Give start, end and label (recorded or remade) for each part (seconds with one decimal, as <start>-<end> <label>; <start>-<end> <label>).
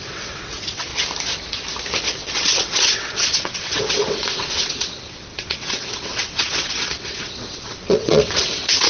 0.0-0.9 remade; 0.9-2.3 recorded; 2.3-8.9 remade